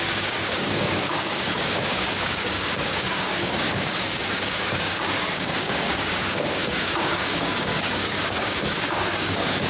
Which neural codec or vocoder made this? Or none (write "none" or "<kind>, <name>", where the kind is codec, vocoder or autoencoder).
codec, DAC